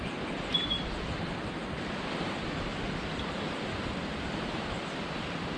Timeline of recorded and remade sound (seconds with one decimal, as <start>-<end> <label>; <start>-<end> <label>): 0.0-2.7 remade; 2.7-4.3 recorded; 4.3-5.6 remade